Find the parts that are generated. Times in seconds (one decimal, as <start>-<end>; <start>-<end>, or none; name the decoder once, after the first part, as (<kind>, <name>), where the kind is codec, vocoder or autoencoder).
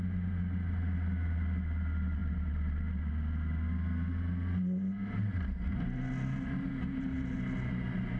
none